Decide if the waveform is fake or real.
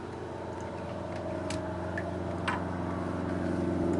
real